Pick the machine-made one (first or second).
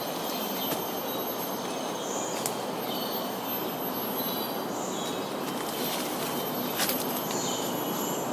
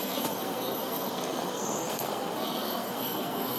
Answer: second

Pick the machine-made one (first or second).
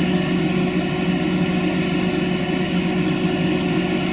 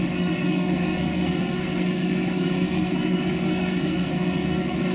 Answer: second